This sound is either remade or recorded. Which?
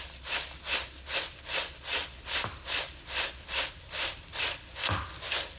recorded